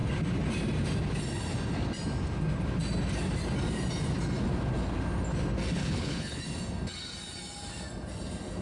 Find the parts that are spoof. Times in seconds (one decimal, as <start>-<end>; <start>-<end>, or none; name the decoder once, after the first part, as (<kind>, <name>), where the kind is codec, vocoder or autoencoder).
5.8-6.4 (codec, HILCodec)